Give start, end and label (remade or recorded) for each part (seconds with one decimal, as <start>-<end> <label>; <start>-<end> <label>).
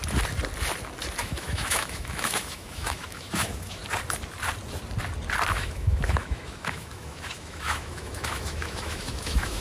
0.0-1.2 recorded; 1.2-3.8 remade; 3.8-5.5 recorded; 5.5-9.6 remade